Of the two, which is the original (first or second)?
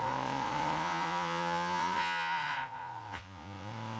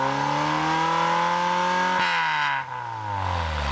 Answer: second